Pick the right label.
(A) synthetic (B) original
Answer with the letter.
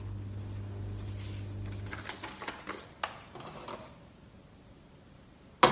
B